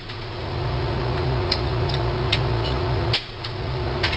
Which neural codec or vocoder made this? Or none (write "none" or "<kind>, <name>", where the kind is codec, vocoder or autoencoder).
vocoder, Vocos